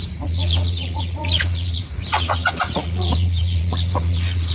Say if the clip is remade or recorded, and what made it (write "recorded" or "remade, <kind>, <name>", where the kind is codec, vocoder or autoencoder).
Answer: remade, vocoder, Vocos